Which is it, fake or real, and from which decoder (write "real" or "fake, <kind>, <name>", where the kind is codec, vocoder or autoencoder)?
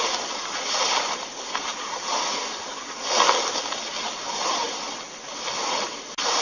real